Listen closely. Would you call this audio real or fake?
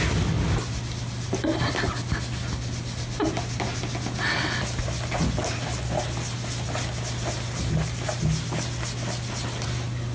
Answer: real